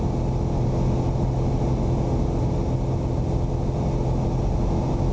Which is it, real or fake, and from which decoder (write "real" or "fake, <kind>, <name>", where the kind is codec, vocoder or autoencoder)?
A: real